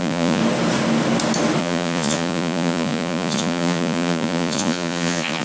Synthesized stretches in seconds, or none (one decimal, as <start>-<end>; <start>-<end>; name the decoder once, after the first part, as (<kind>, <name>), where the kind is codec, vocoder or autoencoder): 0.0-0.4 (vocoder, Vocos); 1.6-5.4